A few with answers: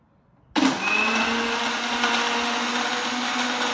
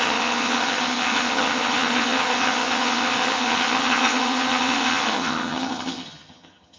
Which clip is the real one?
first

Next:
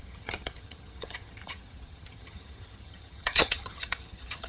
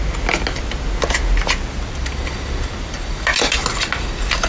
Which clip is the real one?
second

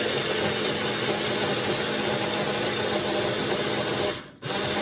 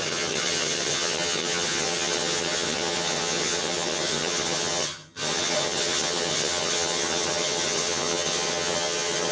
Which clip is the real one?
first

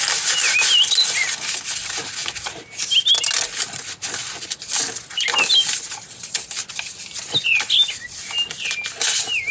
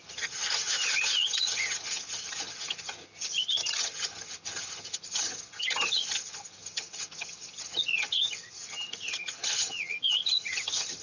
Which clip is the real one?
first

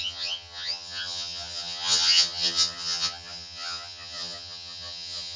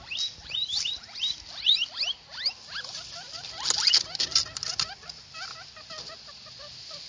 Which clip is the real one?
second